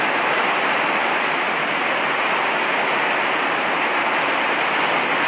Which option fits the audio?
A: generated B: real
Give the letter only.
B